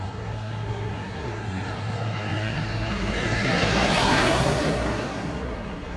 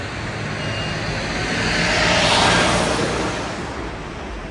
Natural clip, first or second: second